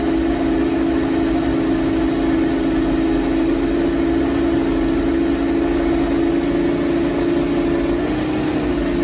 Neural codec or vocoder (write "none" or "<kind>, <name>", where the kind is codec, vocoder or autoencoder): none